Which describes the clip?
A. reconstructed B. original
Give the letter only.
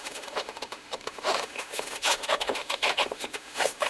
A